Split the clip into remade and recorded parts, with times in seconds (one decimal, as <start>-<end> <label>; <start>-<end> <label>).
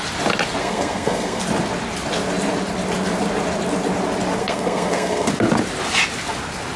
0.0-0.6 recorded; 0.6-1.4 remade; 1.4-4.4 recorded; 4.4-5.3 remade; 5.3-6.8 recorded